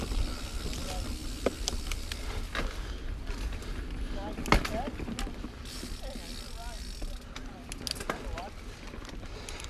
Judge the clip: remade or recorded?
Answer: recorded